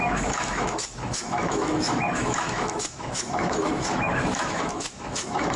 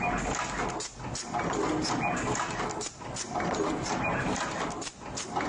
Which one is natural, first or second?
second